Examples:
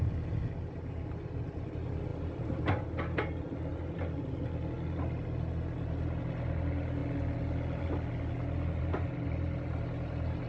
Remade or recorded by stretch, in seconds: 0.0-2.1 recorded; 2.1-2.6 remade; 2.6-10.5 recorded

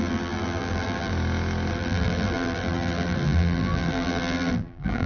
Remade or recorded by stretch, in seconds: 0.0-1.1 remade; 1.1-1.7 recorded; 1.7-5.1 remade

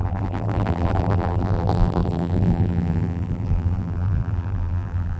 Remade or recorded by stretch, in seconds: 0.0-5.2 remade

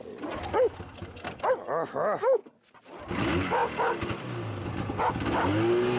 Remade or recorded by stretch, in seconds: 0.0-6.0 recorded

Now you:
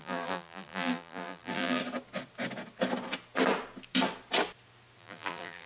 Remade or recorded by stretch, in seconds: 0.0-1.8 remade; 1.8-5.0 recorded; 5.0-5.7 remade

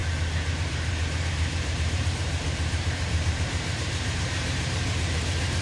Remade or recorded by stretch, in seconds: 0.0-0.6 recorded; 0.6-5.6 remade